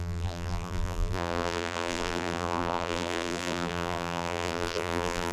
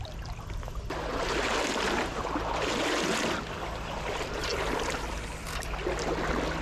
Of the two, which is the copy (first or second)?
first